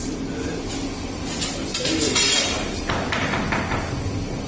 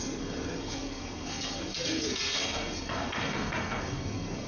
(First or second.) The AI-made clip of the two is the second